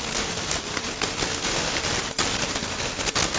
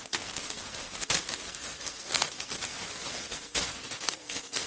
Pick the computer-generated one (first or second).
second